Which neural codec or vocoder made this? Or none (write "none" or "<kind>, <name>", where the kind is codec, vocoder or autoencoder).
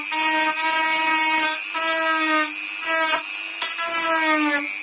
none